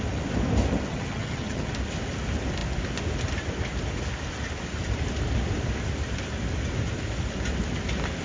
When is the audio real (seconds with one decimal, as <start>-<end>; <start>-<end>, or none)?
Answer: 0.0-0.9; 1.7-8.2